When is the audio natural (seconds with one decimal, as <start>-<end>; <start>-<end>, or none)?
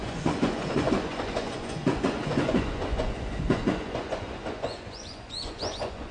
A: none